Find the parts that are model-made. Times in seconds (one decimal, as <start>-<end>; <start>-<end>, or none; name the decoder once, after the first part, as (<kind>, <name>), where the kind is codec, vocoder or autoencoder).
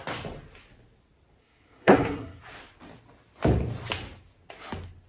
1.4-2.4 (codec, SNAC)